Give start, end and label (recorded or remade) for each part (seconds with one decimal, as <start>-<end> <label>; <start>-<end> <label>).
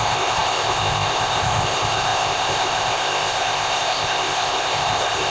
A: 0.0-5.3 remade